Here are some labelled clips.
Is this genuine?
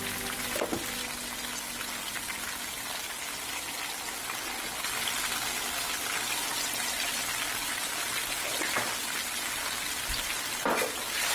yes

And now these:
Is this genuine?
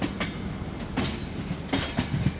yes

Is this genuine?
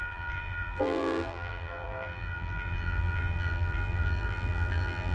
no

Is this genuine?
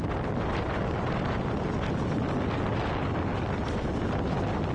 yes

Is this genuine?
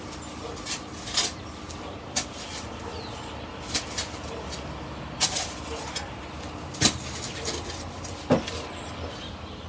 yes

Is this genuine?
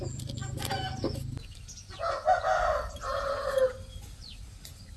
yes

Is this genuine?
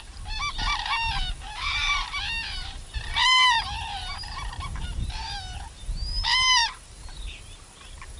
no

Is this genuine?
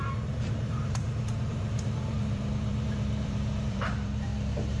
no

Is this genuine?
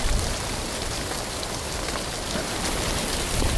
no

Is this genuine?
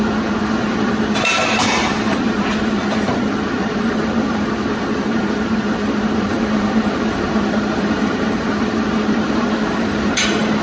no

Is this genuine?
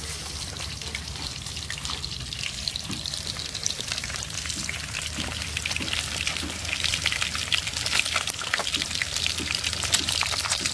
no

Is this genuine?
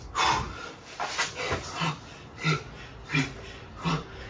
yes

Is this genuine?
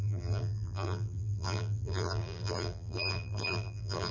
no